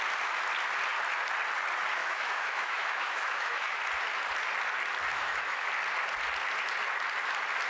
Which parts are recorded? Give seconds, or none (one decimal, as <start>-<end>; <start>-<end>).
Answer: 0.0-2.0; 3.8-5.1; 5.7-7.7